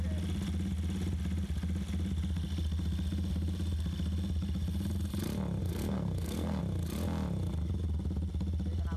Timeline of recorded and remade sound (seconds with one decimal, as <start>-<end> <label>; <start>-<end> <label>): 0.0-5.6 recorded; 5.6-6.6 remade; 6.6-9.0 recorded